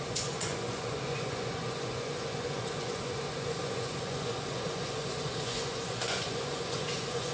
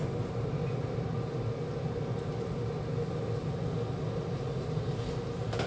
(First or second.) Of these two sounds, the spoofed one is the first